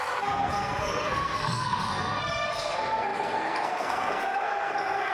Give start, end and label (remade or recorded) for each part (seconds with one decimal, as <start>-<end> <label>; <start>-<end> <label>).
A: 0.0-5.1 remade

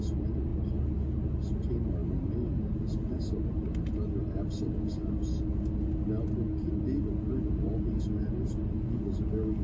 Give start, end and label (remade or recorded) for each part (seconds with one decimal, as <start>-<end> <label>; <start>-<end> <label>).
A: 0.0-9.6 recorded

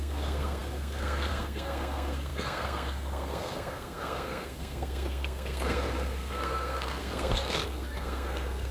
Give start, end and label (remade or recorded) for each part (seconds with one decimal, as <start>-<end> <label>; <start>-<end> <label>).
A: 0.0-8.7 remade

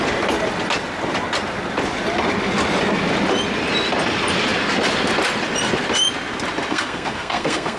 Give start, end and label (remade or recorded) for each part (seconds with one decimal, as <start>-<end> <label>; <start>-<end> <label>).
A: 0.0-6.7 recorded; 6.7-7.8 remade

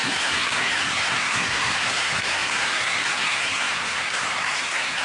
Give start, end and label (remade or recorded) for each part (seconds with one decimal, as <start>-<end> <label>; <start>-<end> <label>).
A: 0.0-5.0 remade

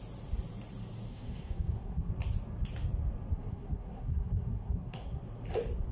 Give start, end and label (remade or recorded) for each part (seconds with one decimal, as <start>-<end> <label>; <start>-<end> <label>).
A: 0.0-1.1 recorded; 1.1-2.1 remade; 2.1-3.3 recorded; 3.3-5.2 remade; 5.2-5.9 recorded